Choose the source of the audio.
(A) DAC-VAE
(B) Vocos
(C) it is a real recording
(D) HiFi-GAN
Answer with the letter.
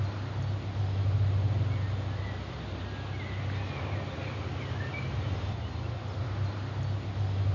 C